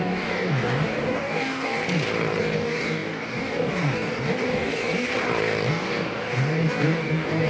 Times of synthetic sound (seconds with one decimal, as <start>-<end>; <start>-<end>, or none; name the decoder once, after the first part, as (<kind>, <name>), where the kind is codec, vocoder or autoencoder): 0.0-1.8 (codec, DAC); 2.4-5.1; 5.7-7.5